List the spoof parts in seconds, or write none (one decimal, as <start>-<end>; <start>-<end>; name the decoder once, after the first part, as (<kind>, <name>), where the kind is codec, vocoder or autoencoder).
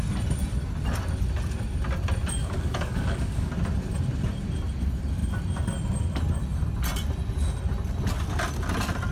2.4-3.5 (codec, DAC)